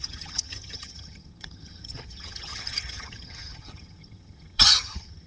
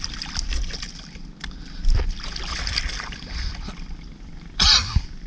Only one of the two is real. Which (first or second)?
second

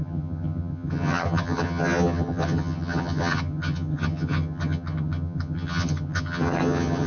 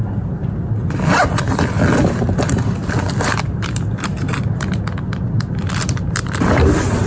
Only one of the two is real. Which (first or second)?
second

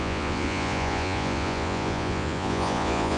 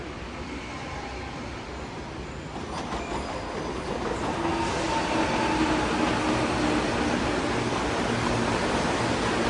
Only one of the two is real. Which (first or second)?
second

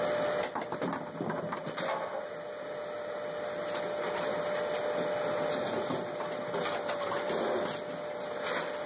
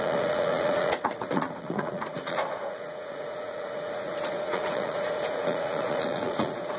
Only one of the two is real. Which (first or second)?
first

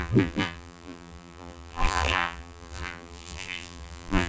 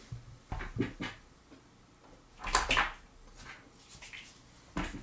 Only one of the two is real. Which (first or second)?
second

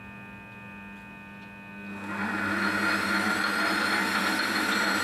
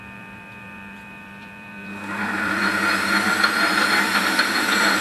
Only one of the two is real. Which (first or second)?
first